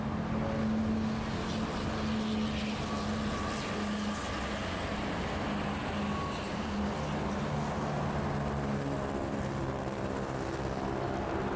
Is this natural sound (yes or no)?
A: yes